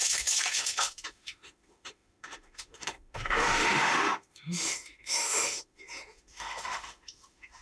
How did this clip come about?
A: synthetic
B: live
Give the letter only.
A